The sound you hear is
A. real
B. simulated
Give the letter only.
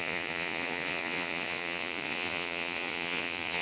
B